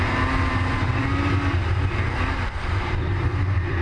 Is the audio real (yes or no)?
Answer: yes